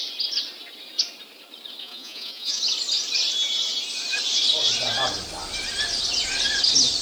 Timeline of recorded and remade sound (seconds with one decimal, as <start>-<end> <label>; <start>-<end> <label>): 0.0-1.8 recorded; 1.8-2.6 remade; 2.6-7.0 recorded